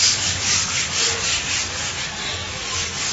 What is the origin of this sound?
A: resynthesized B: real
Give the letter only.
A